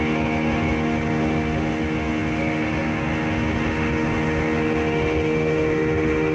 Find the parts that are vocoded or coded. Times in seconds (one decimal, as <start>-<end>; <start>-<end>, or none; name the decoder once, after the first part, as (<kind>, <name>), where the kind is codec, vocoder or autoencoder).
0.0-6.3 (autoencoder, DAC-VAE)